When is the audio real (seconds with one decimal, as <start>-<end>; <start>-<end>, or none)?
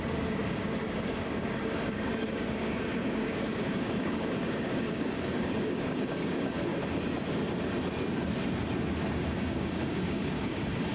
6.7-9.1